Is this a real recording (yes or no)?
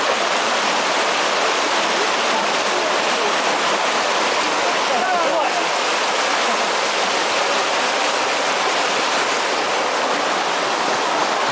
yes